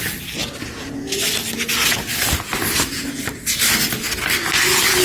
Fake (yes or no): no